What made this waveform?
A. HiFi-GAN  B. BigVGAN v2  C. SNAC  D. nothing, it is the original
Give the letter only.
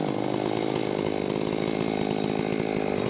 D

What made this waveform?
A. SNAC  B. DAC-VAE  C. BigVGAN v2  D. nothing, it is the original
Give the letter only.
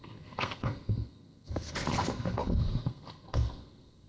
A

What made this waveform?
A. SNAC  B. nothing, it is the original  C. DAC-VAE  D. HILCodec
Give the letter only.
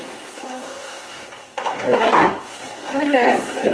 A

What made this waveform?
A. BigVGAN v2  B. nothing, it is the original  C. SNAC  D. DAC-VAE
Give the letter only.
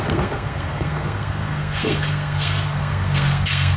C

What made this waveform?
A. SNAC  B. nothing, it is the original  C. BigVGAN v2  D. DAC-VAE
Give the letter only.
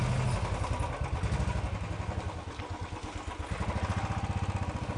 B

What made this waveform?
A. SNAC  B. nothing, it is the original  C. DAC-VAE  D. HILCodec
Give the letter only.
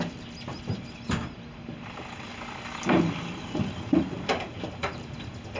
B